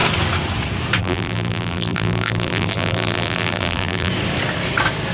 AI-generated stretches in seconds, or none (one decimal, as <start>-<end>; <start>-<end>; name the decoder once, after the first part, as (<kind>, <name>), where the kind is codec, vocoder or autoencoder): 1.0-4.1 (vocoder, BigVGAN v2)